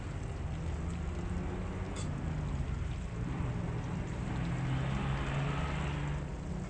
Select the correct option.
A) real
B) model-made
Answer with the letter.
A